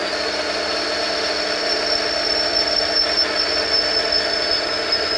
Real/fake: real